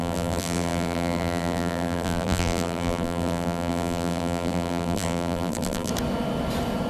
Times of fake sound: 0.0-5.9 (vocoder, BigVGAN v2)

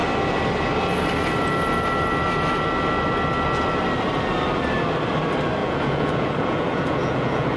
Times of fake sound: 5.6-7.6 (vocoder, Vocos)

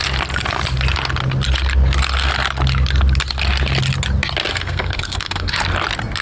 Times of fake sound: 4.5-5.5 (codec, SNAC)